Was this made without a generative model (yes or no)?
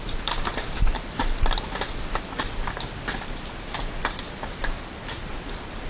yes